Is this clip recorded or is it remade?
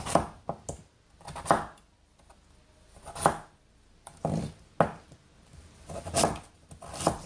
recorded